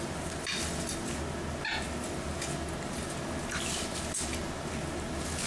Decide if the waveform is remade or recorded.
recorded